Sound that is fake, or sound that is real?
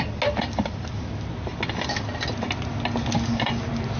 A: real